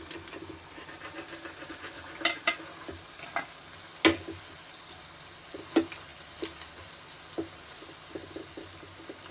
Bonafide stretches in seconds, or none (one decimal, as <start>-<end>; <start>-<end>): 0.0-9.3